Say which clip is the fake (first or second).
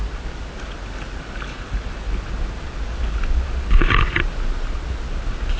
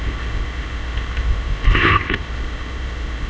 second